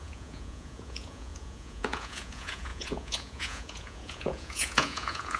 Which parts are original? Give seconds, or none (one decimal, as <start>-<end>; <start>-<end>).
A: none